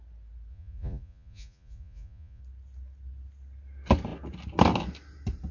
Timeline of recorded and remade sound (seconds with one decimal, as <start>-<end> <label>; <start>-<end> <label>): 0.0-0.5 recorded; 0.5-2.4 remade; 2.4-5.5 recorded